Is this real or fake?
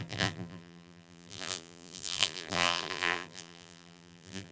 fake